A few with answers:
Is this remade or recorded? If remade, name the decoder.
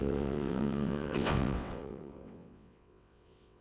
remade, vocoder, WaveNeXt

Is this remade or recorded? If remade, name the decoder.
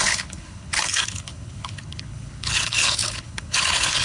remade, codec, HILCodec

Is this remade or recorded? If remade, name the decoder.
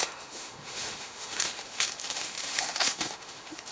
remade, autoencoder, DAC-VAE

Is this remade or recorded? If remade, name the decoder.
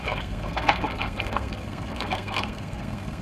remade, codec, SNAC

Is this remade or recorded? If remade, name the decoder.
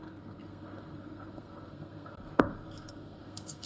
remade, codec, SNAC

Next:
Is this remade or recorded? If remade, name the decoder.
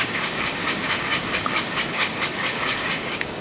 remade, codec, DAC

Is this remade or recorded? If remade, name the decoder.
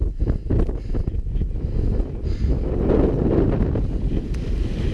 recorded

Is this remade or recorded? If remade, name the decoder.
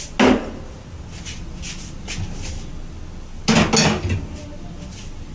recorded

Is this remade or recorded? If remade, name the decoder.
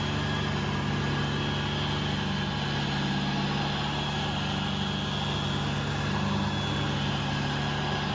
recorded